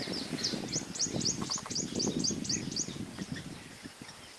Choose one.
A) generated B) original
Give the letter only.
B